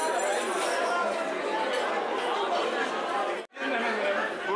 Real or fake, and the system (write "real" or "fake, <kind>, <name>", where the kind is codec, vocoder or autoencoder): real